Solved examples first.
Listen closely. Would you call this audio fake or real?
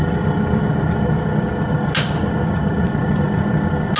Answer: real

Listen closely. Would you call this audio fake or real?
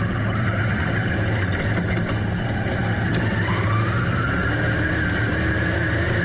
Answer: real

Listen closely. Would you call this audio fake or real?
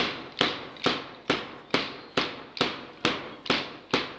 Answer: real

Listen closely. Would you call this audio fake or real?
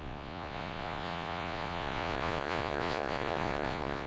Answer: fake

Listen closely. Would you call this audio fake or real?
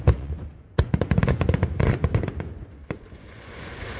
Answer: fake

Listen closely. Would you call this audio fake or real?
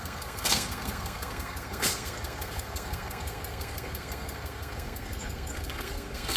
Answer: fake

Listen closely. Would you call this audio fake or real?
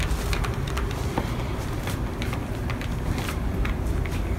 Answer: real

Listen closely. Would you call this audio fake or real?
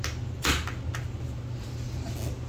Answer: real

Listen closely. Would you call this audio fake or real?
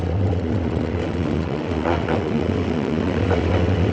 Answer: fake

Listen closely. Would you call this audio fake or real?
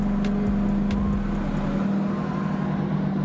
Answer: real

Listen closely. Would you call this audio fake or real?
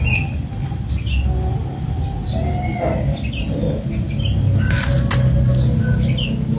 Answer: real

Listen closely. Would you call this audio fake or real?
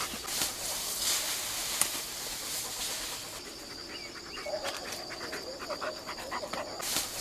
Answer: real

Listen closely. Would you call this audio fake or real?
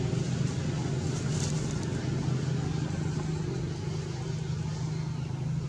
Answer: real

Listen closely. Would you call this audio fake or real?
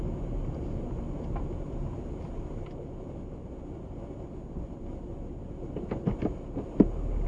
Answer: real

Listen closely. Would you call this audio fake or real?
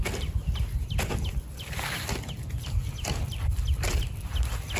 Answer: real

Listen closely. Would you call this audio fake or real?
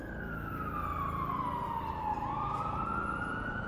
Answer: real